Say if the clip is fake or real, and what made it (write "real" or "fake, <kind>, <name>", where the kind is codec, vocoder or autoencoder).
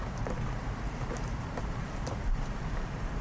fake, vocoder, BigVGAN v2